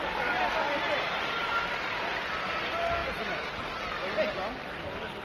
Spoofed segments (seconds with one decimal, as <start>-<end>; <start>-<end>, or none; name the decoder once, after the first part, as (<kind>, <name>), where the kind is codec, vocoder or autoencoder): none